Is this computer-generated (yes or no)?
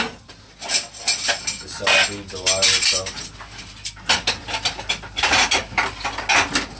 no